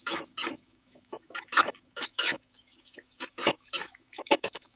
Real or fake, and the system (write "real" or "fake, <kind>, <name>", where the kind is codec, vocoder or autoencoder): fake, autoencoder, DAC-VAE